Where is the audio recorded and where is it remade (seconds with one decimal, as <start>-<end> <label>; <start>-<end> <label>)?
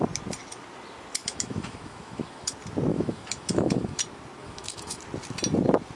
0.0-1.2 recorded; 1.2-2.5 remade; 2.5-2.9 recorded; 2.9-4.0 remade; 4.0-4.4 recorded; 4.4-5.0 remade; 5.0-6.0 recorded